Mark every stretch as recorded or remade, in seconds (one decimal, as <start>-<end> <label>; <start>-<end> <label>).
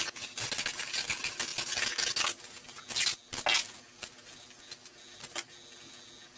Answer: 0.0-6.4 recorded